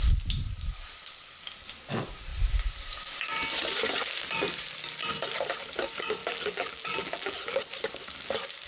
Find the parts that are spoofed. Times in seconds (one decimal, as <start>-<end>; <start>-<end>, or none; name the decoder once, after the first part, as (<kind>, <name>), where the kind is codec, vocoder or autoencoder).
6.2-7.6 (vocoder, BigVGAN v2)

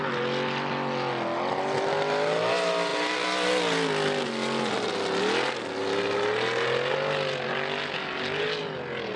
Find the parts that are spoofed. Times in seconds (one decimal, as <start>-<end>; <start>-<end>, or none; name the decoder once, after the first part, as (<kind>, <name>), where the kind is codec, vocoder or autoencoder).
none

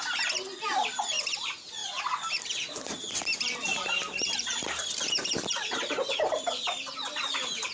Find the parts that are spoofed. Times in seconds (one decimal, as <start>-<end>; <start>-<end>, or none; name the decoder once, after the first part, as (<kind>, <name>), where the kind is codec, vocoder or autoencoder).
1.8-6.1 (vocoder, BigVGAN v2)

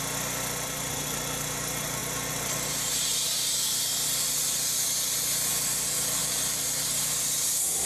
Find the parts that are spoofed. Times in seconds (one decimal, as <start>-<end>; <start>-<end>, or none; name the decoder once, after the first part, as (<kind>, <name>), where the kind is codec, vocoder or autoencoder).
6.2-6.9 (vocoder, BigVGAN v2)

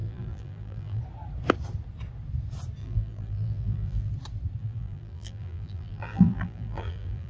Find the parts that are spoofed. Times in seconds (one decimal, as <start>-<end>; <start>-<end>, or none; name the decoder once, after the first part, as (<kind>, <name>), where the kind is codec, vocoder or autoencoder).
0.0-1.0 (vocoder, BigVGAN v2); 2.8-4.1; 4.6-7.3